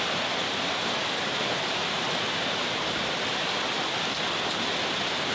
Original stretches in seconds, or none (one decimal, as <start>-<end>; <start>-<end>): 0.0-5.3